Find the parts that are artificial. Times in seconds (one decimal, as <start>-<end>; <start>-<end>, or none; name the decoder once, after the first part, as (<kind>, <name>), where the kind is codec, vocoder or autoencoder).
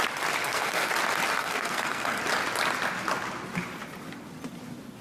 0.4-0.9 (codec, SNAC); 1.4-2.2